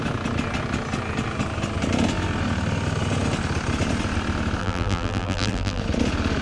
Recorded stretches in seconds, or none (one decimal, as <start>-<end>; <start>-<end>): 0.0-4.6; 5.8-6.4